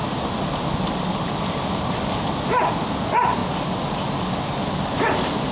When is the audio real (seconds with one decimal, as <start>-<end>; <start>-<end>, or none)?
0.0-5.5